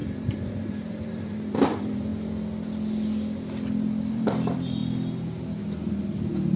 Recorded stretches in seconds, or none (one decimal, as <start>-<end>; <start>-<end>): 2.1-4.1; 4.8-6.6